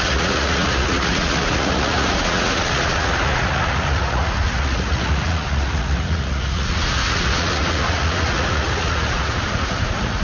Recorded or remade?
remade